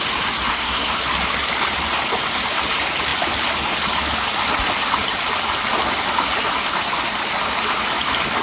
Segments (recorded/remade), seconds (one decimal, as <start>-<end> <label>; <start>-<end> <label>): 0.0-0.5 recorded; 0.5-1.0 remade; 1.0-8.4 recorded